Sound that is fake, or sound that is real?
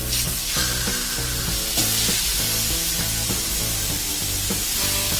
real